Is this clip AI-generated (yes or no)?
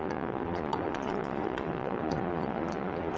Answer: yes